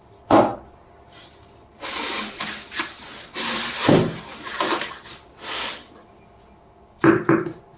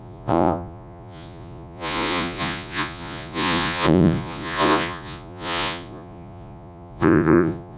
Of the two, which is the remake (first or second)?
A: second